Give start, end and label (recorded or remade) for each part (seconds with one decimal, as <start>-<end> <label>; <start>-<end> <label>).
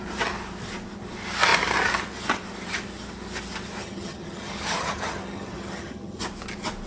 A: 0.0-3.8 recorded; 3.8-6.2 remade; 6.2-6.9 recorded